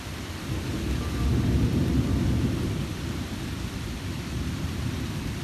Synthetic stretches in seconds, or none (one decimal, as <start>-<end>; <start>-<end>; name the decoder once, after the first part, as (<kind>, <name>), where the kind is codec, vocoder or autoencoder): 0.0-0.7 (vocoder, BigVGAN v2); 1.3-5.4